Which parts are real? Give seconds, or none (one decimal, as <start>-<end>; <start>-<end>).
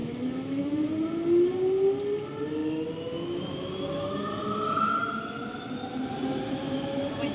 0.9-7.3